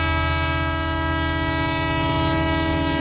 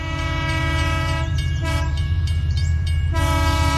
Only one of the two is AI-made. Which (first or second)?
second